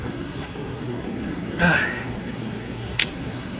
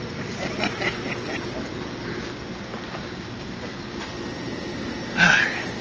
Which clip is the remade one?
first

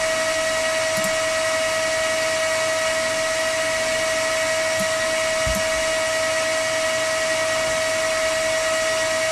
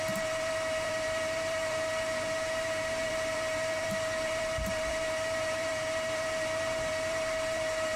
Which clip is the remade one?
second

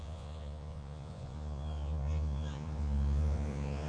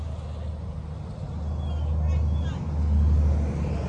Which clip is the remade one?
first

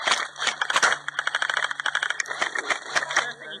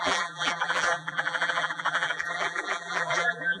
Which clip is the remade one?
second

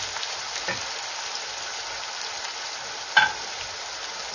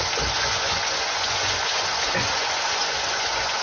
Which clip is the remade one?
second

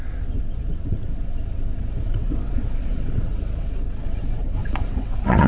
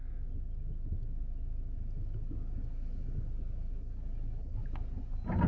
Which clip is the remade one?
first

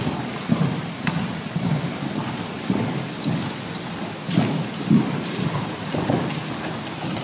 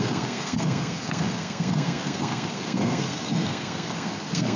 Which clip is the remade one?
second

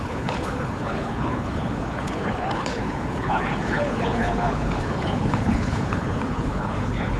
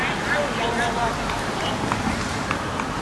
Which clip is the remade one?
first